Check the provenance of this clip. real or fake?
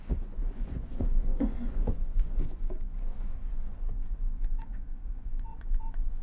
fake